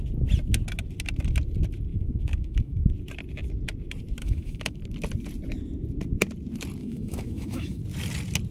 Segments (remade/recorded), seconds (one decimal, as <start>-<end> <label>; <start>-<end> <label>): 0.0-1.9 recorded; 1.9-2.9 remade; 2.9-4.2 recorded; 4.2-4.8 remade; 4.8-6.8 recorded; 6.8-7.8 remade; 7.8-8.5 recorded